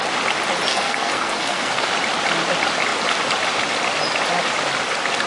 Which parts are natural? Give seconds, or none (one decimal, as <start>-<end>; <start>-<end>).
0.0-0.7; 1.9-5.3